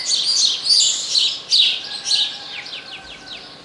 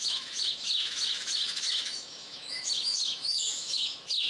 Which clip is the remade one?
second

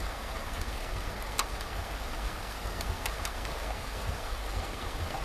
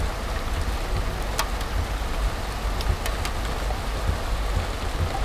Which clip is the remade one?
first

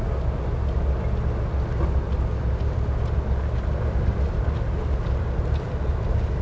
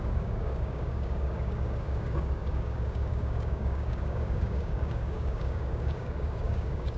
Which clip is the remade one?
second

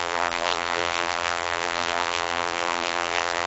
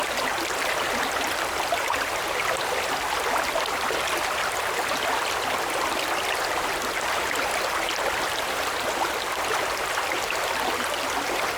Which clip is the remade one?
first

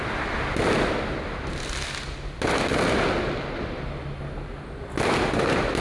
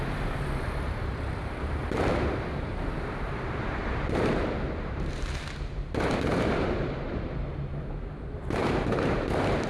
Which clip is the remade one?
second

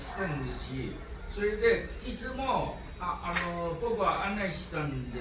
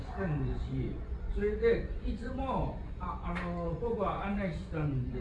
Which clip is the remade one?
second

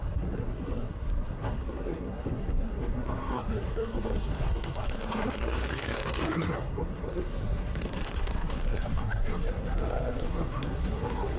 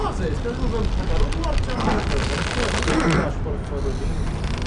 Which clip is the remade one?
first